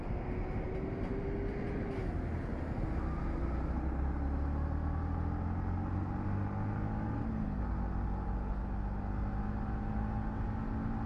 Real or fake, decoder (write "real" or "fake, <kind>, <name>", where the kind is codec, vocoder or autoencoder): real